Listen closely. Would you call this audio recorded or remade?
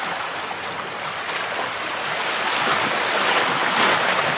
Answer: recorded